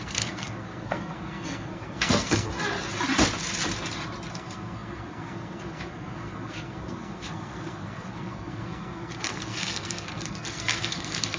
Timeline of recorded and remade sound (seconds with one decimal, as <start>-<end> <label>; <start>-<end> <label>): 0.0-2.5 remade; 2.5-4.3 recorded; 4.3-11.4 remade